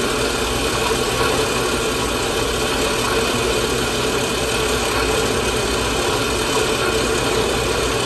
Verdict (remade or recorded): recorded